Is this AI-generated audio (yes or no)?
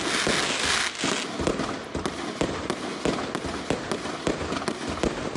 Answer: no